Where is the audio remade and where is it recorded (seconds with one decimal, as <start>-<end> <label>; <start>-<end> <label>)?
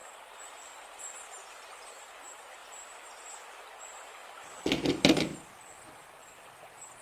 0.0-2.6 recorded; 2.6-3.2 remade; 3.2-4.2 recorded; 4.2-4.7 remade; 4.7-7.0 recorded